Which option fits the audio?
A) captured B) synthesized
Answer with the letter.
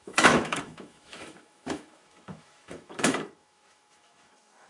B